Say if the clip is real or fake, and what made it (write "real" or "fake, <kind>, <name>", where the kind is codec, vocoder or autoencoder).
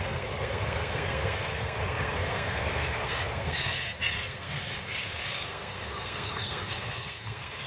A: fake, codec, SNAC